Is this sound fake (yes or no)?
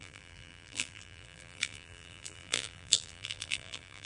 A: yes